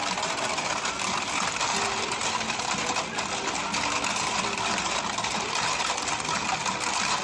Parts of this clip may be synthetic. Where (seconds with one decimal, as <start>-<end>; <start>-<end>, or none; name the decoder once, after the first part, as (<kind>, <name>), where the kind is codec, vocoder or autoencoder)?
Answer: none